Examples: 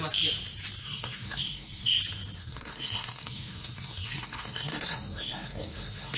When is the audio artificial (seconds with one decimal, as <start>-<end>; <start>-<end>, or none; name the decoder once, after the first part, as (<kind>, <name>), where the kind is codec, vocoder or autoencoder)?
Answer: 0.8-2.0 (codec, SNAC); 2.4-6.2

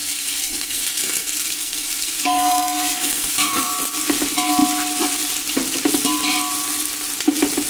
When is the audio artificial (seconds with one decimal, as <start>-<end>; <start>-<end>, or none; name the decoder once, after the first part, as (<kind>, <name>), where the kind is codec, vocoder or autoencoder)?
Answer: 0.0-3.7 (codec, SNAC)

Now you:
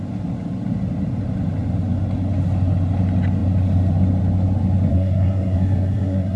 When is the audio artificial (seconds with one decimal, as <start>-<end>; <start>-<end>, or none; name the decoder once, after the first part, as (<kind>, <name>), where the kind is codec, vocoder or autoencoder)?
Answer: 4.9-6.4 (codec, SNAC)

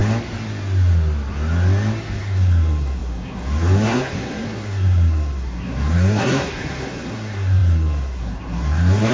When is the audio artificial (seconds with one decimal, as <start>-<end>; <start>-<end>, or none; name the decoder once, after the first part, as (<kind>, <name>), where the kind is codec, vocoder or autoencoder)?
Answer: 2.2-9.1 (codec, SNAC)